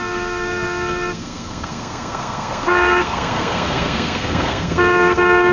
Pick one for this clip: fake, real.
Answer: fake